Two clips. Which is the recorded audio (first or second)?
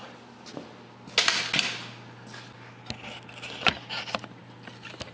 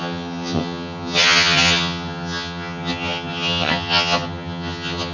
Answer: first